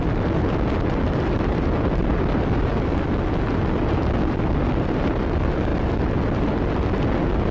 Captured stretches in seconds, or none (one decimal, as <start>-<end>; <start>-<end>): 0.0-7.5